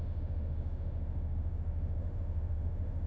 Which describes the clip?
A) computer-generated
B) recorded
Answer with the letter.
A